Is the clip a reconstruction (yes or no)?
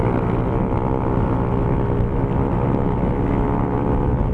no